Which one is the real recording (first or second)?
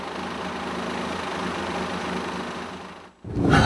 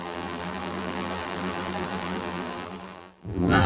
first